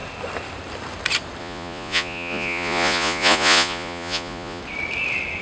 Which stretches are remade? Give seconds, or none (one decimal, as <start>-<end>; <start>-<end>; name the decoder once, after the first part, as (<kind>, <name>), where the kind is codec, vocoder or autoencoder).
1.4-4.6 (vocoder, Vocos)